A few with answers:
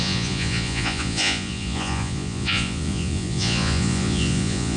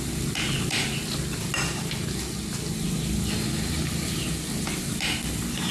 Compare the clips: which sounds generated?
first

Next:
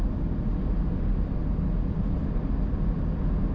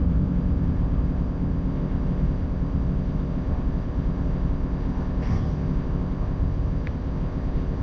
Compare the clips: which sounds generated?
second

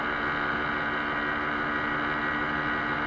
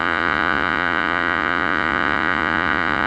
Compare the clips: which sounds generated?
second